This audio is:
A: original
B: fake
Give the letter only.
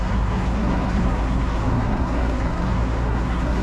B